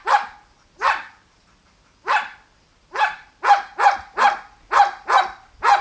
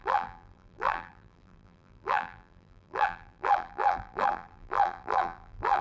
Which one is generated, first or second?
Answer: second